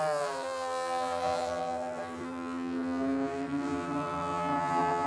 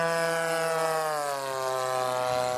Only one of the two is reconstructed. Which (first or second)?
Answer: first